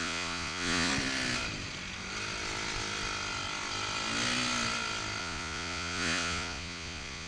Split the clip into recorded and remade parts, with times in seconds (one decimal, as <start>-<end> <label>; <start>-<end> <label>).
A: 0.0-0.9 remade; 0.9-5.2 recorded; 5.2-7.3 remade